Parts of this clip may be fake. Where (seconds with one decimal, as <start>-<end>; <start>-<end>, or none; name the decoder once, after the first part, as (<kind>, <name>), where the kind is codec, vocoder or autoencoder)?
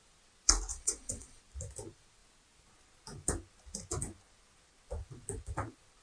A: 0.7-1.4 (vocoder, WaveNeXt)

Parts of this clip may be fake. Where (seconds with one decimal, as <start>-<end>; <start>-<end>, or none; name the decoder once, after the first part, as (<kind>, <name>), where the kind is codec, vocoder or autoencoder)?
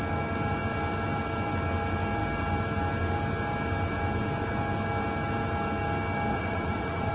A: 6.3-7.1 (vocoder, Vocos)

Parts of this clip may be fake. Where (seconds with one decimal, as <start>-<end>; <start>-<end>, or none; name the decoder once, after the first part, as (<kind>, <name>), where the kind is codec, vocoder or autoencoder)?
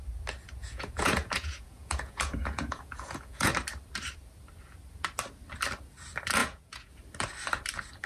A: 0.6-3.5 (vocoder, Vocos); 6.4-6.9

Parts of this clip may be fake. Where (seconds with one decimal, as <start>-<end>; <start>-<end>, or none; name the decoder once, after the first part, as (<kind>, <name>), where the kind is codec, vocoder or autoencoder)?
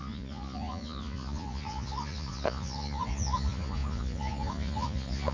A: 0.0-5.3 (vocoder, Vocos)